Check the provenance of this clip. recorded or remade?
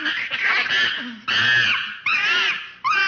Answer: recorded